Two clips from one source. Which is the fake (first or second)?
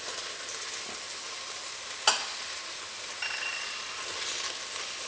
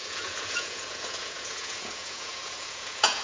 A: second